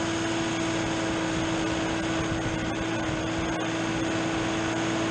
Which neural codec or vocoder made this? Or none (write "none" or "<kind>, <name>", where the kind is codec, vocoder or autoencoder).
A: none